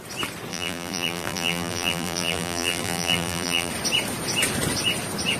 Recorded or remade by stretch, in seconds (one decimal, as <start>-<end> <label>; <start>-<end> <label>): 0.0-0.5 recorded; 0.5-3.7 remade; 3.7-5.4 recorded